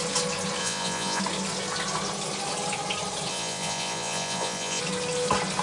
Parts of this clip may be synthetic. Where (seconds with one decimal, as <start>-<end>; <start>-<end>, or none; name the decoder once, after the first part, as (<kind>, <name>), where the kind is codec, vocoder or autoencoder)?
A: 0.6-1.2 (vocoder, Vocos); 3.3-4.8